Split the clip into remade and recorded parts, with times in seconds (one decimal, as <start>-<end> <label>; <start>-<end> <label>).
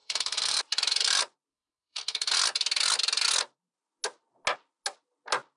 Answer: 0.0-0.6 remade; 0.6-1.5 recorded; 1.5-2.3 remade; 2.3-5.6 recorded